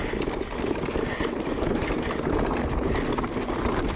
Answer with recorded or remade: recorded